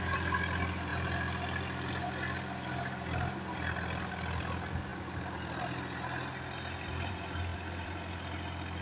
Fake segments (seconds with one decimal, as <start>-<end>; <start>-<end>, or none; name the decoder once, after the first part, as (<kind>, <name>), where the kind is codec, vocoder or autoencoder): 7.5-8.1 (vocoder, BigVGAN v2)